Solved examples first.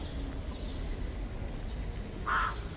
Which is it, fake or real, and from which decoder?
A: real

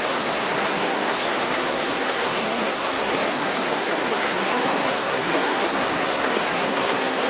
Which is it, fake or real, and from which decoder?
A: fake, codec, SNAC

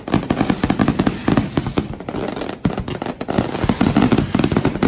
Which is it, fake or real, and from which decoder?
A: real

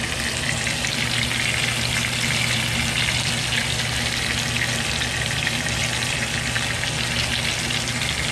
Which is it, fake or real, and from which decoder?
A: real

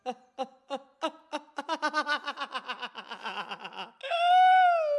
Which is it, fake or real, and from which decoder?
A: real